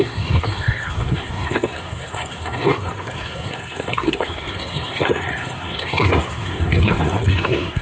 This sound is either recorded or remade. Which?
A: remade